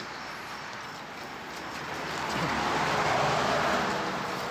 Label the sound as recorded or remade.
recorded